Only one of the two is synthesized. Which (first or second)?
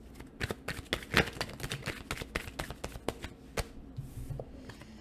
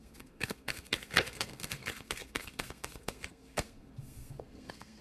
second